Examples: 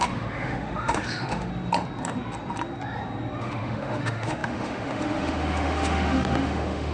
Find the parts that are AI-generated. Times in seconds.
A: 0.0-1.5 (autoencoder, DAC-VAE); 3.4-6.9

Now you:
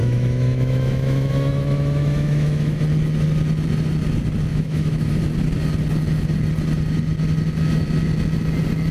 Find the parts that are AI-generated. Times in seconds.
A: 0.0-2.8 (autoencoder, DAC-VAE); 4.5-5.1